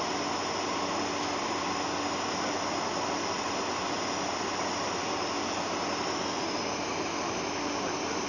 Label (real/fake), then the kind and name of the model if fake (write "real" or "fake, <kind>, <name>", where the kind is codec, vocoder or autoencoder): real